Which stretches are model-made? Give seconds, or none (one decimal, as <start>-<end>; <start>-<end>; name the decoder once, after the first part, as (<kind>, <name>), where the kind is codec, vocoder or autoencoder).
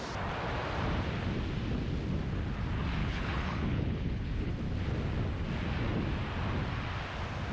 3.0-4.5 (codec, HILCodec)